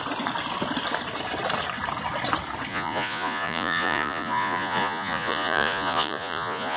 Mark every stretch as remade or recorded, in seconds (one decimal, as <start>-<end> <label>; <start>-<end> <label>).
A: 0.0-2.7 recorded; 2.7-6.8 remade